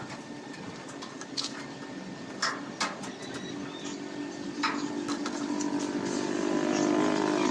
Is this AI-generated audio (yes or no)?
no